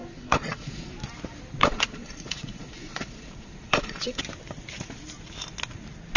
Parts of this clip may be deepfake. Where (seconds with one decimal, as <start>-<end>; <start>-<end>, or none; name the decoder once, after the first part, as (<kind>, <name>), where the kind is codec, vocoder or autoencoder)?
0.0-0.9 (vocoder, Vocos); 1.6-4.2